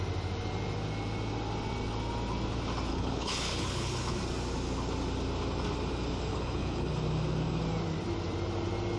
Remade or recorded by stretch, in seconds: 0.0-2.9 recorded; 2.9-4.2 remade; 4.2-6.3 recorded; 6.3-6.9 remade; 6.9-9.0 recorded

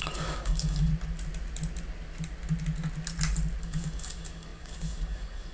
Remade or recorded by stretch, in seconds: 0.0-0.9 remade; 0.9-3.6 recorded; 3.6-5.5 remade